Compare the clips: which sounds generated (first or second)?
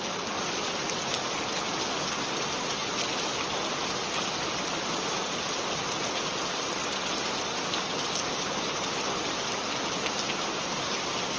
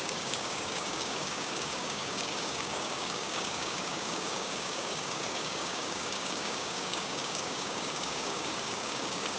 second